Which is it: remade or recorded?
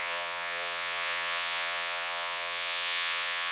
remade